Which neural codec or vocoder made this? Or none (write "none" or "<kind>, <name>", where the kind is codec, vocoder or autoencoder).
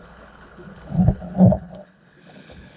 codec, HILCodec